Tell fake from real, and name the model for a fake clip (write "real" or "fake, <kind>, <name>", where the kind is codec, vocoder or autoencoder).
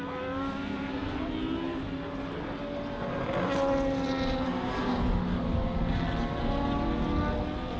real